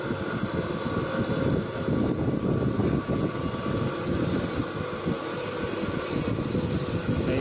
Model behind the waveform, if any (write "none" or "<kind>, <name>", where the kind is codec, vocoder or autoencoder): none